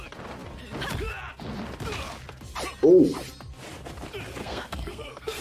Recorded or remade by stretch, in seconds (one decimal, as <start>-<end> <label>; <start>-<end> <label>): 0.0-4.4 recorded; 4.4-5.4 remade